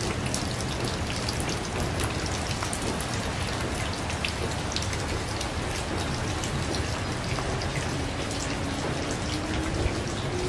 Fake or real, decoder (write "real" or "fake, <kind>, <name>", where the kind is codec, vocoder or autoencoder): real